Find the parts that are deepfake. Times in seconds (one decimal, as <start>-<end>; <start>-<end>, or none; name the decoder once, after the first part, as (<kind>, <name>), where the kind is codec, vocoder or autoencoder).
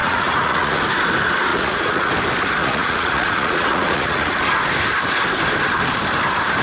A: 0.0-0.8 (vocoder, Vocos); 1.5-2.1; 2.6-4.4